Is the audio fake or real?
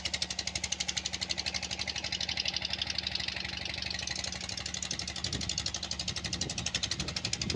real